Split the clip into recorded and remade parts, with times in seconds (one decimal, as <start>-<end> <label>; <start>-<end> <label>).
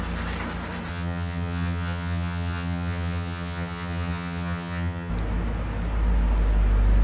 0.0-0.9 recorded; 0.9-5.1 remade; 5.1-7.0 recorded